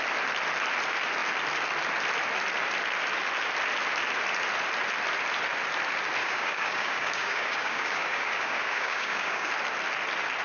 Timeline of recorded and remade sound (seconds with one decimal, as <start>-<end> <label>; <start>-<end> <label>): 0.0-6.2 recorded; 6.2-9.5 remade; 9.5-10.4 recorded